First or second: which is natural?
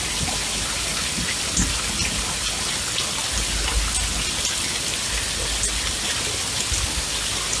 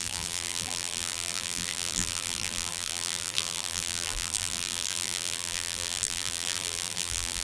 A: first